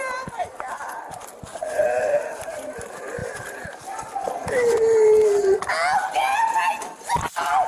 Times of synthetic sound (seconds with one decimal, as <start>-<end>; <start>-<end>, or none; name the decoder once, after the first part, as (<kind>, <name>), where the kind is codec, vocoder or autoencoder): none

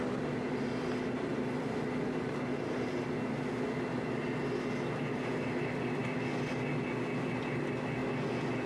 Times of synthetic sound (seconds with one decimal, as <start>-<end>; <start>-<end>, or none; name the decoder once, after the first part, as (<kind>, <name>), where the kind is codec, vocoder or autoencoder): none

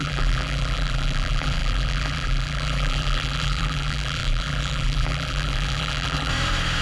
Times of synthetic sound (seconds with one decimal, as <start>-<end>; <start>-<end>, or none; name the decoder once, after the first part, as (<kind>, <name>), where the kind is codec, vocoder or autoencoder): 0.0-6.3 (vocoder, BigVGAN v2)

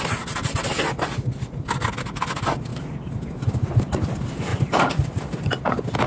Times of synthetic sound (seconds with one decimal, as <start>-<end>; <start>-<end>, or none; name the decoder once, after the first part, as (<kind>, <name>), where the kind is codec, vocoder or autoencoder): 4.5-5.2 (vocoder, BigVGAN v2)